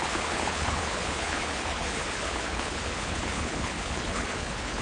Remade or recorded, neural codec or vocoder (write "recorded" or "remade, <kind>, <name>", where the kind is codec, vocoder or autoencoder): remade, codec, HILCodec